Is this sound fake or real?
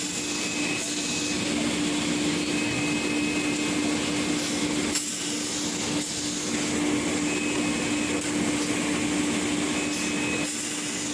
real